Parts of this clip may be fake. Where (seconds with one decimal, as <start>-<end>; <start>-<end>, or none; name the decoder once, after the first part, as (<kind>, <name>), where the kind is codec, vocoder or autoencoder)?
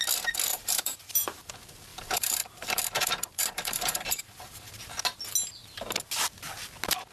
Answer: 0.5-1.5 (vocoder, BigVGAN v2); 1.9-4.7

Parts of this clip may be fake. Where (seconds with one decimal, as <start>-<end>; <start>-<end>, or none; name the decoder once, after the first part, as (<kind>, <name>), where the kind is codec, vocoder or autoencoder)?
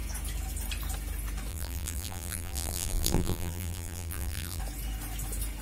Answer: 1.5-4.6 (vocoder, BigVGAN v2)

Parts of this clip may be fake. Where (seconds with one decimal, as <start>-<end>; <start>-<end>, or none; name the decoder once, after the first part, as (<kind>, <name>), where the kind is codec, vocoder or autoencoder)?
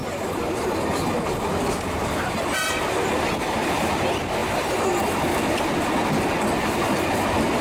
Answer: none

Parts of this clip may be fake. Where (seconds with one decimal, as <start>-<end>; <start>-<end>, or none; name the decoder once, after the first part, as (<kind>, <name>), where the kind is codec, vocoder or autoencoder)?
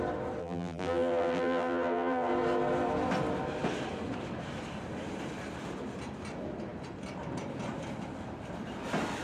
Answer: 0.4-2.3 (vocoder, BigVGAN v2)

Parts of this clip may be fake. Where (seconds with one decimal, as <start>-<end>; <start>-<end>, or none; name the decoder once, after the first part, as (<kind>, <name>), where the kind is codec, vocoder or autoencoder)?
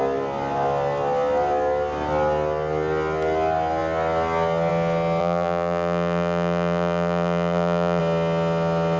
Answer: 5.2-8.0 (vocoder, BigVGAN v2)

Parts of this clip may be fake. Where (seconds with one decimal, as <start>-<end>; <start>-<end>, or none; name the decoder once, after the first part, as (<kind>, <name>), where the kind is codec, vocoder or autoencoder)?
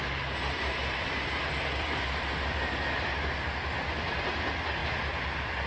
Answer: 0.8-4.2 (vocoder, BigVGAN v2); 4.8-5.7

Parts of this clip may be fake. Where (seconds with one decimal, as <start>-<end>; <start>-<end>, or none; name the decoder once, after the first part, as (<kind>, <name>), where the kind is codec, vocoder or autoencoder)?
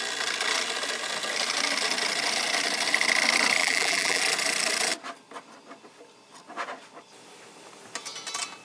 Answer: 3.6-4.2 (vocoder, BigVGAN v2)